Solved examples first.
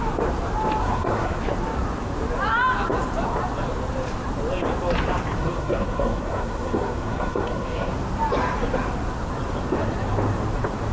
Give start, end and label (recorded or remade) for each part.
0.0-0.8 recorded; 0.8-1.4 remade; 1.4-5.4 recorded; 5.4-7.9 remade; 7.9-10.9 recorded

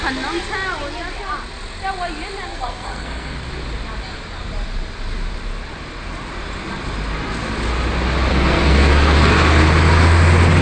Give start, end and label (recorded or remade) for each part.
0.0-2.5 recorded; 2.5-3.5 remade; 3.5-8.3 recorded; 8.3-9.3 remade; 9.3-10.6 recorded

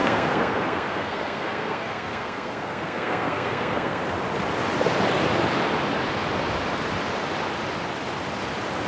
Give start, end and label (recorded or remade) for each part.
0.0-4.0 remade; 4.0-8.9 recorded

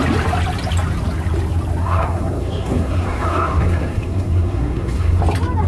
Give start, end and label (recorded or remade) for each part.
0.0-1.8 recorded; 1.8-5.2 remade; 5.2-5.7 recorded